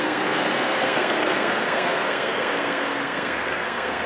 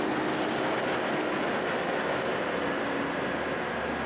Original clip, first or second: second